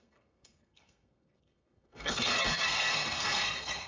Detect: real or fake fake